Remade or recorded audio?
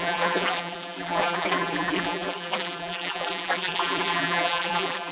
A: remade